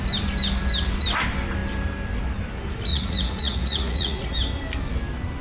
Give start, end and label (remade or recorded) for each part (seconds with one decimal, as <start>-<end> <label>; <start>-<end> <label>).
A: 0.0-2.9 recorded; 2.9-4.3 remade; 4.3-5.4 recorded